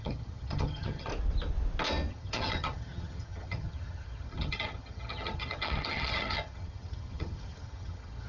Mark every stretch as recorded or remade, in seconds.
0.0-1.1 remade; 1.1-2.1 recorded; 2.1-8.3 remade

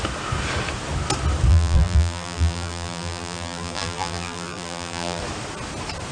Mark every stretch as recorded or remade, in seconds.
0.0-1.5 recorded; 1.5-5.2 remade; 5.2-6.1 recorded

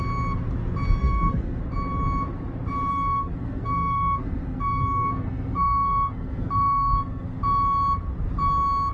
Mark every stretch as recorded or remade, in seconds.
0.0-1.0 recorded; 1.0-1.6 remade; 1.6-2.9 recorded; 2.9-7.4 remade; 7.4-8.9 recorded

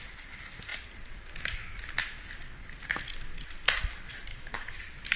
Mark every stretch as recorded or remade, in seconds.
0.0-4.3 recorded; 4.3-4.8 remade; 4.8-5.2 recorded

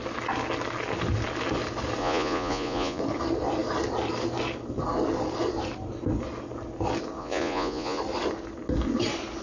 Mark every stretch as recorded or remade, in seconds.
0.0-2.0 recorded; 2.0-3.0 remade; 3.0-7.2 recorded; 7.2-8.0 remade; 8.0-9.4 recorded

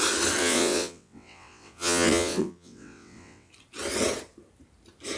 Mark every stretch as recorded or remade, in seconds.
0.0-0.4 recorded; 0.4-3.5 remade; 3.5-5.2 recorded